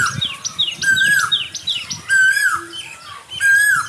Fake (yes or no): no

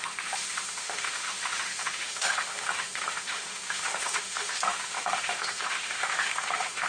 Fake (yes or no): yes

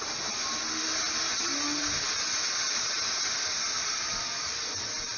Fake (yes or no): no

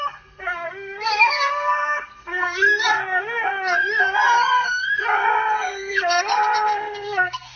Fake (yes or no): yes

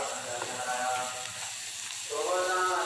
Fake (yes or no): no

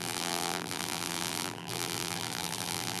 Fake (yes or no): yes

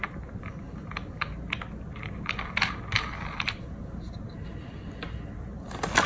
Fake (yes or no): no